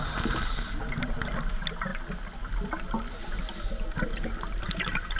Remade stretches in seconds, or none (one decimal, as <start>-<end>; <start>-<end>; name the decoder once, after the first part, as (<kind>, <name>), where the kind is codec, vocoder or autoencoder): none